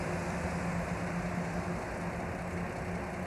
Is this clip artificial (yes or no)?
no